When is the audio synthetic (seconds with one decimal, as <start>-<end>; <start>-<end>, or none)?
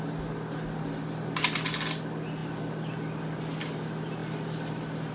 none